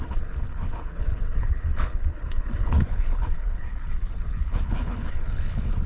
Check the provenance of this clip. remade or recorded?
remade